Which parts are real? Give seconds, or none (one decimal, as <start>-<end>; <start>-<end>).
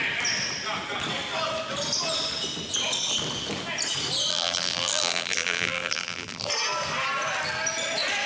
0.0-4.3; 6.5-8.3